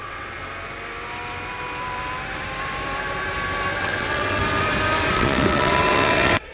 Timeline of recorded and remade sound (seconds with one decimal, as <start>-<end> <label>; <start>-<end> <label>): 0.0-0.4 remade; 0.4-3.8 recorded; 3.8-4.4 remade; 4.4-5.1 recorded; 5.1-6.5 remade